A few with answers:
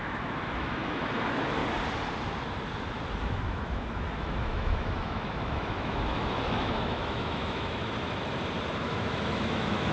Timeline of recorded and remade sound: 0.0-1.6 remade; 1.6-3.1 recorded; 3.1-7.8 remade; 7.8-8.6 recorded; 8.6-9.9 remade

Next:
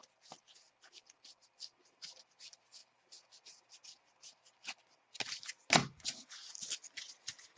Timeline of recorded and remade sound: 0.0-7.6 recorded

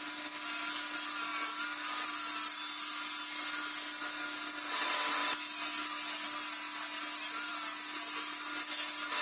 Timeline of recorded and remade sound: 0.0-9.2 recorded

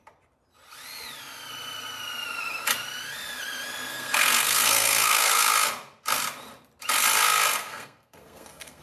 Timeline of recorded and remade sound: 0.0-3.9 recorded; 3.9-5.5 remade; 5.5-7.6 recorded; 7.6-8.8 remade

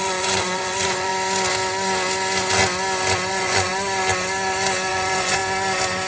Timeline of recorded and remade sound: 0.0-1.1 remade; 1.1-3.3 recorded; 3.3-3.7 remade; 3.7-4.9 recorded; 4.9-5.4 remade; 5.4-6.1 recorded

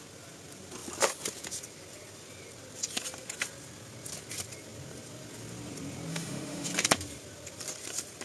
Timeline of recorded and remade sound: 0.0-6.1 recorded; 6.1-6.7 remade; 6.7-8.2 recorded